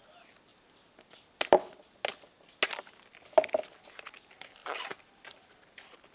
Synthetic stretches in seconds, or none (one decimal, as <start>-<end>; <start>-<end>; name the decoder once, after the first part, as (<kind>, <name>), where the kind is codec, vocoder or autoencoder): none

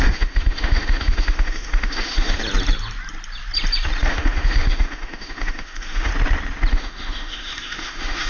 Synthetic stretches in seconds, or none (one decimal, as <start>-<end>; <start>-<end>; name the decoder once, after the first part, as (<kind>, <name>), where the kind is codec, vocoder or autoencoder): 0.0-2.4 (autoencoder, DAC-VAE); 4.0-6.1; 6.7-8.3

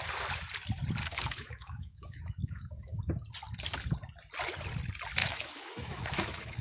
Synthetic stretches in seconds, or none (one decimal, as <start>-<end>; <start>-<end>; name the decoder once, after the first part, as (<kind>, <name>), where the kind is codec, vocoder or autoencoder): 1.0-3.0 (autoencoder, DAC-VAE); 5.2-6.6

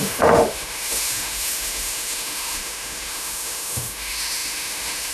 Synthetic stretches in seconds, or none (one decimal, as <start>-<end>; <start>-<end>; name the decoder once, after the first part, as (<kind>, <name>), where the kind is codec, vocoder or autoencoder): 0.0-5.1 (autoencoder, DAC-VAE)

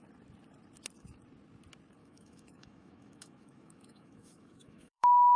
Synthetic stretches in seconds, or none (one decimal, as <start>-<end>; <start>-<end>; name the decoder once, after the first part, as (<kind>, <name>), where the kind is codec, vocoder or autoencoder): 2.0-5.4 (autoencoder, DAC-VAE)

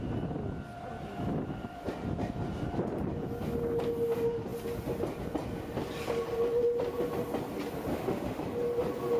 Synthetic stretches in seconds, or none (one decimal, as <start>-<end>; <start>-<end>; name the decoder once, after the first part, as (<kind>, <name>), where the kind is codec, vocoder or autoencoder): 7.9-8.4 (autoencoder, DAC-VAE)